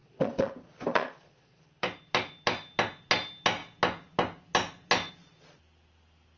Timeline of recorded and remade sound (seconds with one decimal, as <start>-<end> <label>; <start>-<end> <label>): 0.0-0.5 remade; 0.5-0.9 recorded; 0.9-1.6 remade; 1.6-6.4 recorded